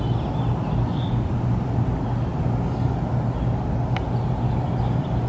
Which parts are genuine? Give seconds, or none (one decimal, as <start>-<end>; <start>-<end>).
0.0-5.3